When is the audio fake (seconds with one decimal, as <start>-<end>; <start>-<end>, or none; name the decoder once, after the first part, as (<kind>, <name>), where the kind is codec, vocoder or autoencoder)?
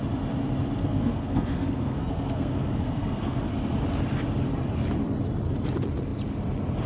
0.8-3.4 (codec, SNAC)